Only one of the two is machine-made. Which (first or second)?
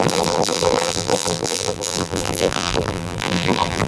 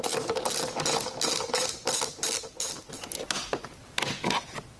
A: first